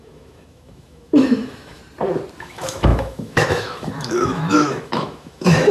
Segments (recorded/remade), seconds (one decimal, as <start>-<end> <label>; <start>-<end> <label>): 0.0-1.8 remade; 1.8-2.4 recorded; 2.4-5.7 remade